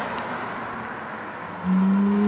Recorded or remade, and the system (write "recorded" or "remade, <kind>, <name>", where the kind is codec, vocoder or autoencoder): recorded